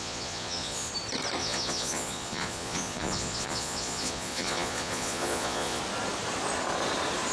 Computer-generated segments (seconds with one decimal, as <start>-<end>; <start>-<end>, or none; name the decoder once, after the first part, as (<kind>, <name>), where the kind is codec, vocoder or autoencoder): 0.0-0.9 (vocoder, Vocos); 1.4-5.8